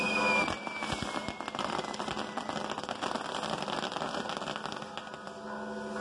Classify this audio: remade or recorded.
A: recorded